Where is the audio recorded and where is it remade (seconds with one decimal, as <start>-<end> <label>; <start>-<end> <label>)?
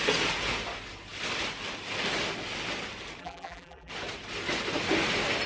0.0-3.2 recorded; 3.2-3.9 remade; 3.9-5.5 recorded